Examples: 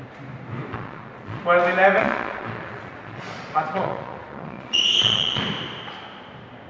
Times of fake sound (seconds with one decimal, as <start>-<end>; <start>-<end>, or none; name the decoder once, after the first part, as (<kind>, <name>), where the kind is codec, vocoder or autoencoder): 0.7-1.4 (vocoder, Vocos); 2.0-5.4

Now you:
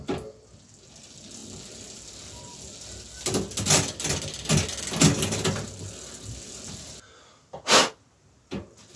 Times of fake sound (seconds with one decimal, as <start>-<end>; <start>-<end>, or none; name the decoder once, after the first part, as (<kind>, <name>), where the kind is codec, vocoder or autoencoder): none

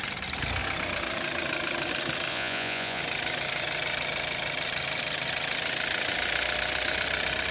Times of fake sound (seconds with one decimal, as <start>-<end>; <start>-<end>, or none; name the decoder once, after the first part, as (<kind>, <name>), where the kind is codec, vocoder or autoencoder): 2.3-3.0 (vocoder, Vocos)

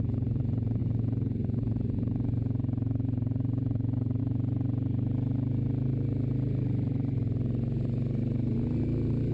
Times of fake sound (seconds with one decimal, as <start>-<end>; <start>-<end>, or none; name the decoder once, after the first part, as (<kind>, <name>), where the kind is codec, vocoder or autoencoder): none

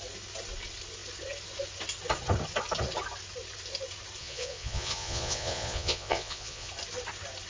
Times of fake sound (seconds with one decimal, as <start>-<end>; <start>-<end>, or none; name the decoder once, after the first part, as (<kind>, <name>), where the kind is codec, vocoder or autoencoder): 4.2-6.7 (vocoder, Vocos)

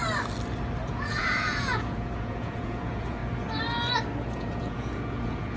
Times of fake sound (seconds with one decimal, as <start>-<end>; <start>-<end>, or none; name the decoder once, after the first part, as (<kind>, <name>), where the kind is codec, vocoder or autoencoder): 0.9-3.2 (vocoder, Vocos); 4.3-5.6